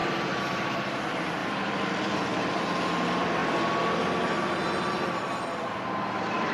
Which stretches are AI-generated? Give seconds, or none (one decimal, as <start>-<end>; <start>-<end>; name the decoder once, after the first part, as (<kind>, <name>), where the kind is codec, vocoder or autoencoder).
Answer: 0.6-3.4 (vocoder, BigVGAN v2); 5.1-6.5